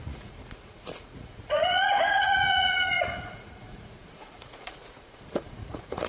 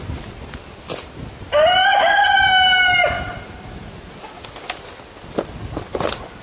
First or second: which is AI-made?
first